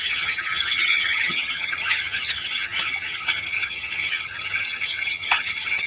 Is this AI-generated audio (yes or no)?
yes